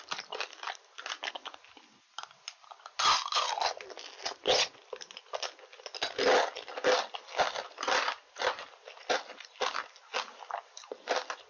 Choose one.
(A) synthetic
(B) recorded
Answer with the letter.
B